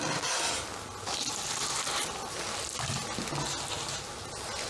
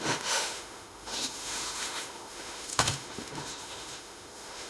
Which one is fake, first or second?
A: second